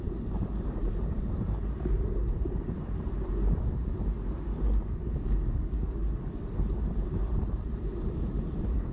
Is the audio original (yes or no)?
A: no